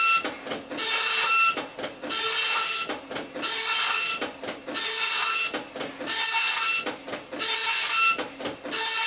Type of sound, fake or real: real